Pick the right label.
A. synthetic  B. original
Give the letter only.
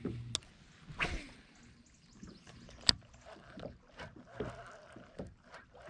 B